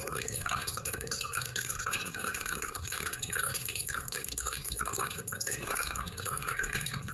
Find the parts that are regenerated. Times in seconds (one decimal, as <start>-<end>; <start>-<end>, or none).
0.0-7.1